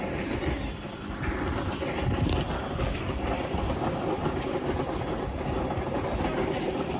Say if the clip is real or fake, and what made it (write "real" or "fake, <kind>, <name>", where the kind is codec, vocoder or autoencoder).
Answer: real